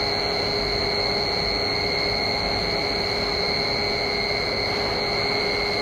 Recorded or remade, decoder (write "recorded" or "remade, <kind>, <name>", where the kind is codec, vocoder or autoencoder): recorded